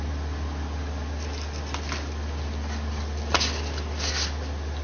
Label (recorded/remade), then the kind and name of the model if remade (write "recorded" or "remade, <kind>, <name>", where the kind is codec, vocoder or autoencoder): recorded